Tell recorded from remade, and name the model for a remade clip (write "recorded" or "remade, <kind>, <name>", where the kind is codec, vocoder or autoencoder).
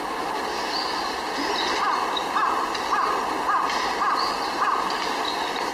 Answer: recorded